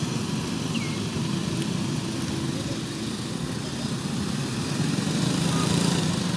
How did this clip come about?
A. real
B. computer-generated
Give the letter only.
A